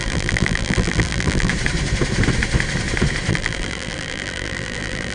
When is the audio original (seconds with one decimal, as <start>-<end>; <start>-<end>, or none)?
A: 1.5-3.3